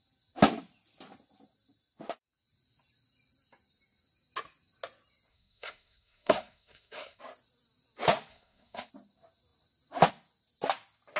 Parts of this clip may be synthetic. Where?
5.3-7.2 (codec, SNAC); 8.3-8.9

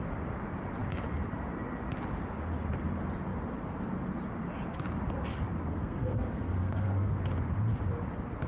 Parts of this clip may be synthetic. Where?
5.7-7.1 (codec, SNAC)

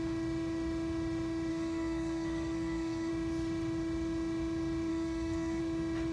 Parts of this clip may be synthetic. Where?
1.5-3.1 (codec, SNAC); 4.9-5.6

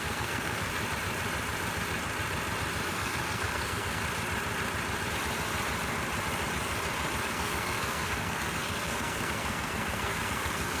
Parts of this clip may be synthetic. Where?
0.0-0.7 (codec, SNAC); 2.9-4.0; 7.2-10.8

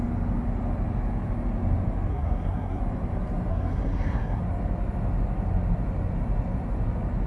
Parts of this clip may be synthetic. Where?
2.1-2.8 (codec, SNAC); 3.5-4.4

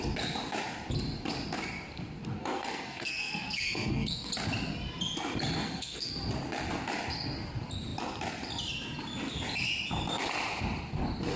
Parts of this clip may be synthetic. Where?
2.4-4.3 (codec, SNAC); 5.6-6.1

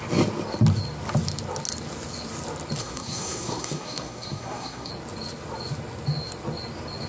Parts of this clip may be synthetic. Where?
2.8-4.9 (codec, SNAC)